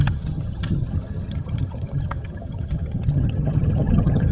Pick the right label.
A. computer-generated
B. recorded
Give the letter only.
A